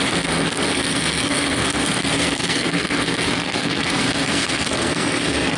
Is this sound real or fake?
fake